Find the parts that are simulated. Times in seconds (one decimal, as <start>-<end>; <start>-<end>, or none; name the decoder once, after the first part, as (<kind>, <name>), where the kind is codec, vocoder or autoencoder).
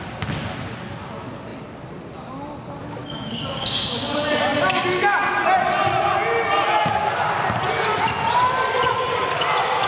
2.8-3.3 (autoencoder, DAC-VAE)